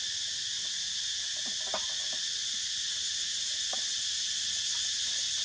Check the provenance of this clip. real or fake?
real